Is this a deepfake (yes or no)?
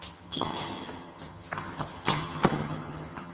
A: yes